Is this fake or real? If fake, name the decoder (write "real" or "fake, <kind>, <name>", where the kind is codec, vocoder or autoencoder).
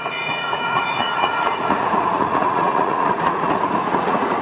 fake, vocoder, Vocos